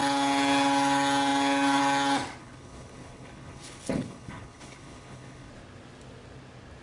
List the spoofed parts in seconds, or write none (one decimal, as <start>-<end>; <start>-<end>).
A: 2.4-5.5